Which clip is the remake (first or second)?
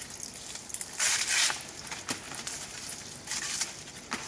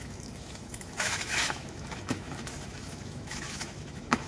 second